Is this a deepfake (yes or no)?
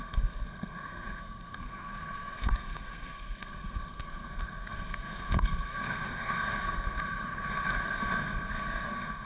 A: yes